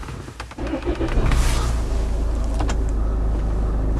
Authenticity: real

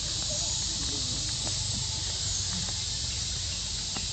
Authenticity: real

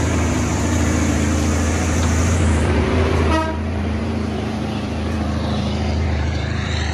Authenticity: fake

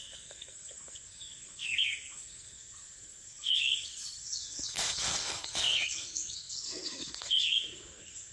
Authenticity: fake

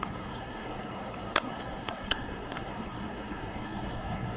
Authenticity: fake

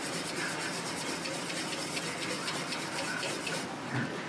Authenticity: real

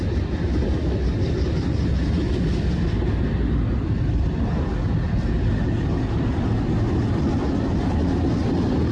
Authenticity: real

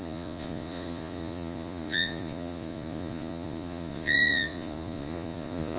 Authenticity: fake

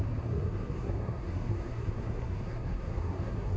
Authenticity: fake